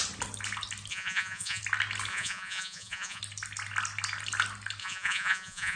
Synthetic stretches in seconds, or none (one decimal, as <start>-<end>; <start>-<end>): 0.9-1.6; 2.1-3.2; 4.8-5.8